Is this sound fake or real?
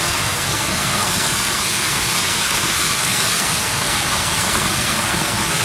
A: fake